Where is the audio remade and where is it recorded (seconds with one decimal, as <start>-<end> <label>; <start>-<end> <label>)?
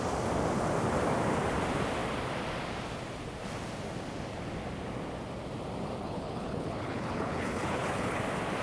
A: 0.0-6.0 recorded; 6.0-8.2 remade; 8.2-8.6 recorded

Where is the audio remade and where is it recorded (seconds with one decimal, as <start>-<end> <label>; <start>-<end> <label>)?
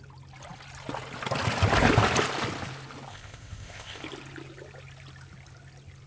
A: 0.0-3.1 recorded; 3.1-4.0 remade; 4.0-6.1 recorded